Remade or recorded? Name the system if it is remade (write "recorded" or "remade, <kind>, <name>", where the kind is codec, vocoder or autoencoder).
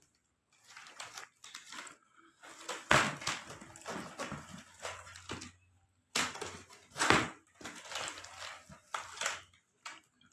recorded